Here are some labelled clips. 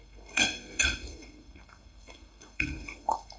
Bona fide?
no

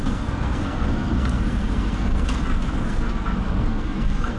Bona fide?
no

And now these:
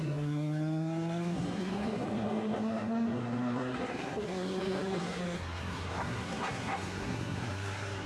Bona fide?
no